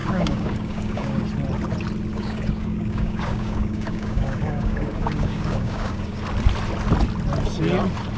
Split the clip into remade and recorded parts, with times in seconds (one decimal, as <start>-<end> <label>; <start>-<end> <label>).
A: 0.0-1.2 remade; 1.2-2.1 recorded; 2.1-6.2 remade; 6.2-8.2 recorded